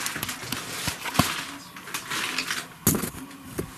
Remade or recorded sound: recorded